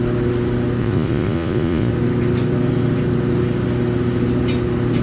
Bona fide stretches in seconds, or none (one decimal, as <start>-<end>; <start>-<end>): 0.0-0.8; 1.9-5.0